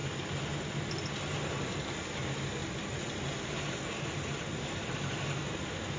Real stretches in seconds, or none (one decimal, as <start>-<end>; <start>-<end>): 0.0-6.0